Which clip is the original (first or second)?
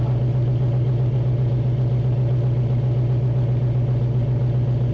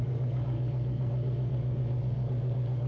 first